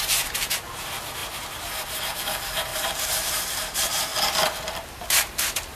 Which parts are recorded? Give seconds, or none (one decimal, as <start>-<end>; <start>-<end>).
4.1-5.0